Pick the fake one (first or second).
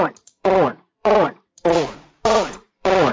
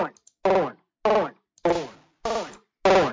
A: first